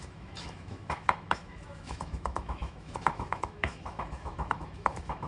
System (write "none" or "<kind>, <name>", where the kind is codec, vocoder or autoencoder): autoencoder, DAC-VAE